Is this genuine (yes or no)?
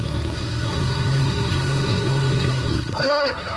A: no